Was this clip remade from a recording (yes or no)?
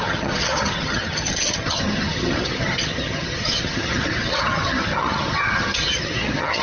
yes